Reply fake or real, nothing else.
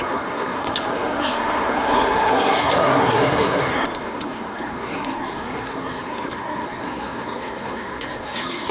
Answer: fake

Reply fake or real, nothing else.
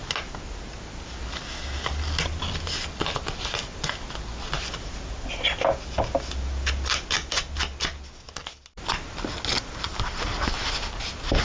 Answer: real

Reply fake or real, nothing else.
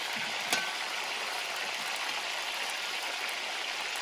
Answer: real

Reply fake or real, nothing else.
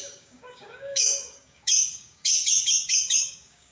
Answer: fake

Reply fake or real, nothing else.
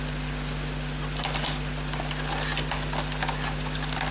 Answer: real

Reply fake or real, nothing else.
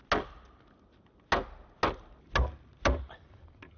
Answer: real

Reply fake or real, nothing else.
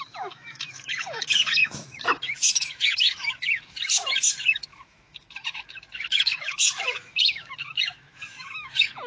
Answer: fake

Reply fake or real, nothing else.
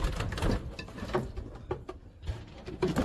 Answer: real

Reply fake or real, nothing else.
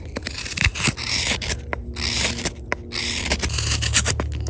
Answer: real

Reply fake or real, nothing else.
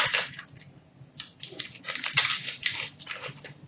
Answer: real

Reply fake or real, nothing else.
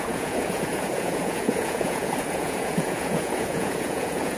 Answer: fake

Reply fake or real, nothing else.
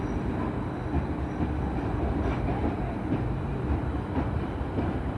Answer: real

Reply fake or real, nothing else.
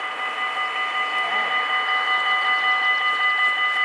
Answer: real